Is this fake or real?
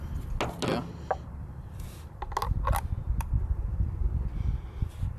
real